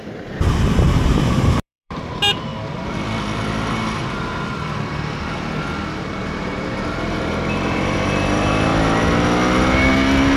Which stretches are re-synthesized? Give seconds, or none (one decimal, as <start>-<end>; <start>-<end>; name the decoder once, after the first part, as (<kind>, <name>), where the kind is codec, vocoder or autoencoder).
0.0-2.5 (vocoder, BigVGAN v2); 6.0-8.7